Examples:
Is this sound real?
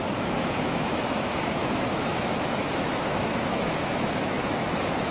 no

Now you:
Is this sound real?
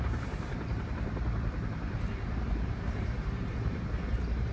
no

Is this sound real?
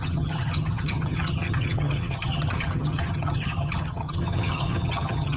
no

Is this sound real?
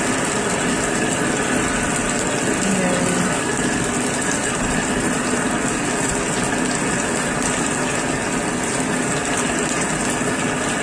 yes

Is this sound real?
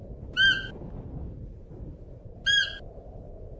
yes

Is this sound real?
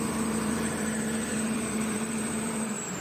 no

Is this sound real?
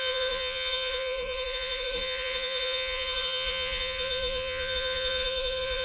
no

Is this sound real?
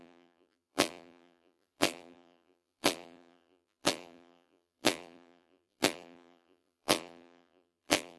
no